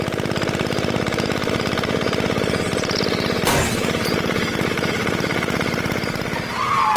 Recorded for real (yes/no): yes